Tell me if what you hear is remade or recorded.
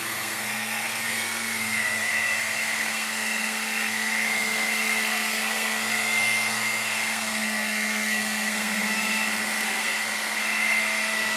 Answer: remade